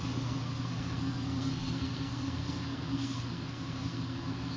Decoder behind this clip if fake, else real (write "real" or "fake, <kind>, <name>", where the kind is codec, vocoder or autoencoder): fake, codec, SNAC